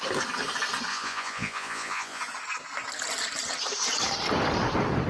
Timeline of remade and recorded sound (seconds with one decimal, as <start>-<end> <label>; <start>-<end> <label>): 0.0-0.9 recorded; 0.9-2.2 remade; 2.2-5.1 recorded